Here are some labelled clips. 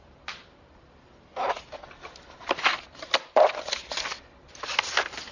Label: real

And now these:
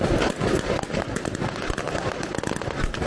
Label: real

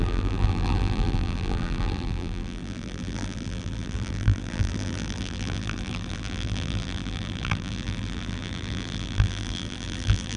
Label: fake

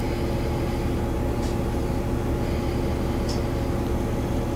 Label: real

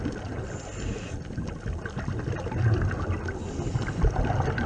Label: real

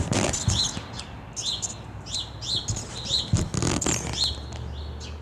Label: real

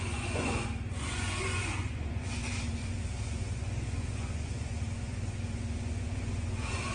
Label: fake